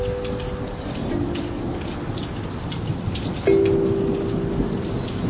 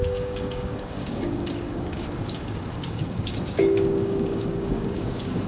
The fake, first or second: second